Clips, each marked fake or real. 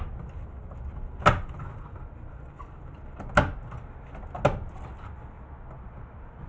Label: real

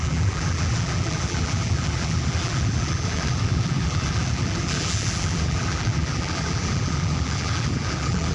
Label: fake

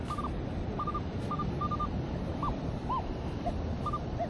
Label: real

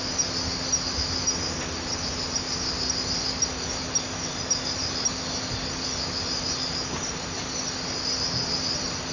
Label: real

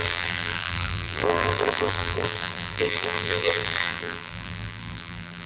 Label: fake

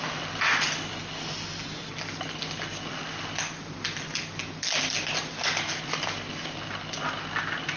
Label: real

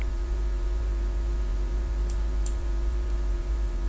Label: fake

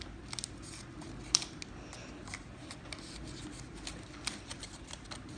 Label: real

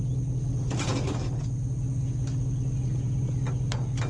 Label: real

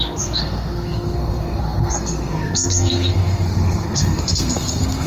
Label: fake